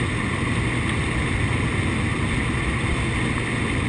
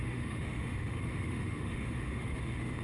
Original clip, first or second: first